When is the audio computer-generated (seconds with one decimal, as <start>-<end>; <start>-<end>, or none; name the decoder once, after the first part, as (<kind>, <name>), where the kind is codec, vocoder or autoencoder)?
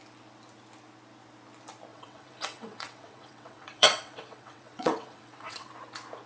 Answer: 1.9-5.7 (vocoder, WaveNeXt)